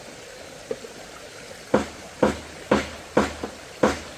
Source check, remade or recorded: recorded